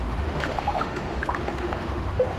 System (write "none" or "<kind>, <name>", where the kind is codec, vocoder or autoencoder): autoencoder, DAC-VAE